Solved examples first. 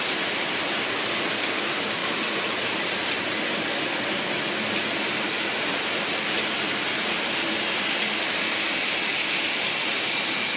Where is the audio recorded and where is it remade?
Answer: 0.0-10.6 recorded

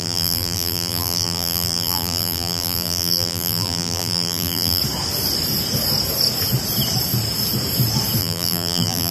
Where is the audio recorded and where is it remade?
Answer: 0.0-4.8 remade; 4.8-8.2 recorded; 8.2-9.1 remade

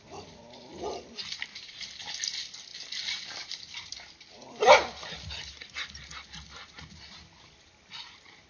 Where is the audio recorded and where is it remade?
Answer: 0.0-8.5 recorded

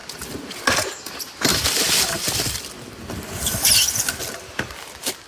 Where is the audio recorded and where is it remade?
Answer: 0.0-1.5 recorded; 1.5-2.6 remade; 2.6-5.3 recorded

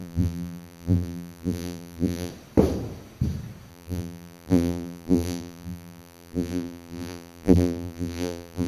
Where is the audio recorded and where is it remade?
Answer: 0.0-2.3 remade; 2.3-3.7 recorded; 3.7-8.7 remade

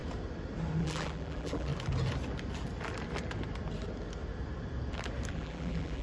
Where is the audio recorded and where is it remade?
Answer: 0.0-0.8 recorded; 0.8-1.7 remade; 1.7-5.3 recorded; 5.3-6.0 remade

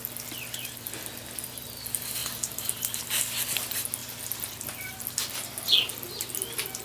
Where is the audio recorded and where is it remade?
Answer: 0.0-2.2 recorded; 2.2-3.0 remade; 3.0-6.8 recorded

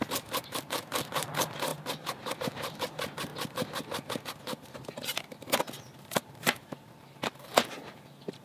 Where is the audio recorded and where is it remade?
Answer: 0.0-1.7 remade; 1.7-2.4 recorded; 2.4-3.3 remade; 3.3-5.8 recorded; 5.8-8.4 remade